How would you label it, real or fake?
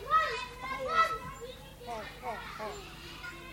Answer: real